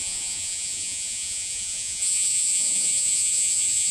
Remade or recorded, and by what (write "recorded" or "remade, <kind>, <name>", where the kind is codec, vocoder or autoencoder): remade, vocoder, Vocos